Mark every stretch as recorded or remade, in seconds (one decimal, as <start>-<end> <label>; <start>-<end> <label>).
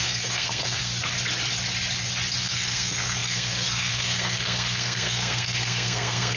0.0-0.9 remade; 0.9-2.4 recorded; 2.4-6.4 remade